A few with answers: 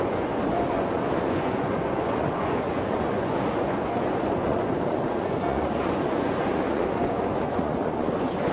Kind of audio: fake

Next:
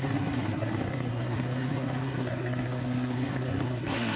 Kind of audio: fake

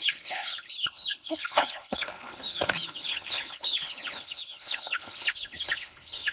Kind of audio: fake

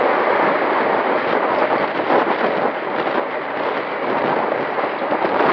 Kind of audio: real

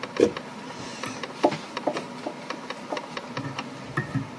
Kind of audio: real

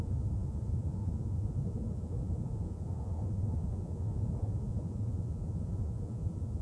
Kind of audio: fake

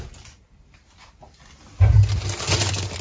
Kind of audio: real